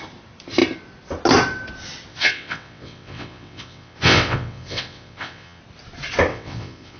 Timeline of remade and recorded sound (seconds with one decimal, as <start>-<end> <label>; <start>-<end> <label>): 0.0-2.1 recorded; 2.1-5.6 remade; 5.6-6.3 recorded; 6.3-7.0 remade